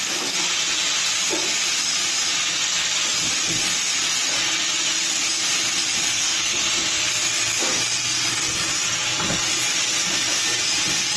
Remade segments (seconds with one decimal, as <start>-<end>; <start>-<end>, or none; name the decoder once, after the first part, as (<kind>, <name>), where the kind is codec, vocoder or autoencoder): 6.1-6.6 (codec, SNAC)